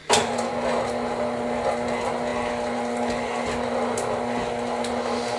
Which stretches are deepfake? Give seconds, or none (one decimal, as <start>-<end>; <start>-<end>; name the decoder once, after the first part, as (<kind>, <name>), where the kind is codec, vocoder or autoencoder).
0.0-0.5 (vocoder, BigVGAN v2)

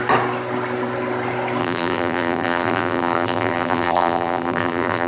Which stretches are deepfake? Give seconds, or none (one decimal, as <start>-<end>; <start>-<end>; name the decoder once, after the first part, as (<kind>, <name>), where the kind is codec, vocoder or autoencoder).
1.6-5.1 (vocoder, BigVGAN v2)

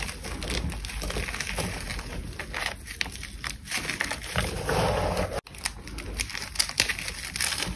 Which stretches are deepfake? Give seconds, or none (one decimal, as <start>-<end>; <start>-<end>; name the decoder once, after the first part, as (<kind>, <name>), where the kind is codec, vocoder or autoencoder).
none

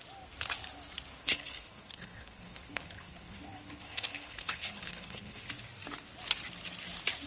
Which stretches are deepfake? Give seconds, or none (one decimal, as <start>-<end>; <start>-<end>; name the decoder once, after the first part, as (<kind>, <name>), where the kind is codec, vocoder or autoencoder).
1.1-5.5 (codec, HILCodec)

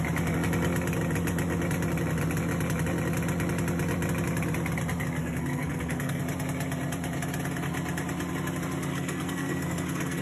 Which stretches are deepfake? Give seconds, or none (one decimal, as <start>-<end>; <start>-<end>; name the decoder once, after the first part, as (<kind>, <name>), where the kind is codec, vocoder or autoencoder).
5.2-6.2 (codec, SNAC); 8.9-10.2

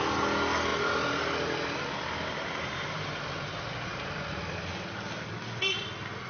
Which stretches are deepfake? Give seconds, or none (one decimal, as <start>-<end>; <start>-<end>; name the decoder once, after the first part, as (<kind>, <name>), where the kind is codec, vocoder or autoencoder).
none

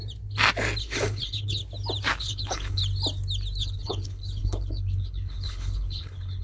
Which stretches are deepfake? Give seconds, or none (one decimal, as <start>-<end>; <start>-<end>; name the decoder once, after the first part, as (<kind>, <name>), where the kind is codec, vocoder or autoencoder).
0.8-1.6 (codec, HILCodec); 2.2-2.8; 3.6-6.4

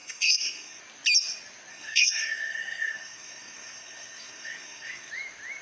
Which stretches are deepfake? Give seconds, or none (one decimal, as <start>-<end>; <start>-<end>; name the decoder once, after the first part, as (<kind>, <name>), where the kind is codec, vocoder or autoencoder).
0.0-0.8 (codec, SNAC); 1.7-5.1